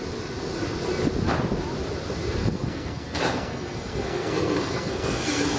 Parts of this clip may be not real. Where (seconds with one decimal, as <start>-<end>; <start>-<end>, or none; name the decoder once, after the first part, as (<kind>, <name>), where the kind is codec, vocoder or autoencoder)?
2.4-5.6 (codec, SNAC)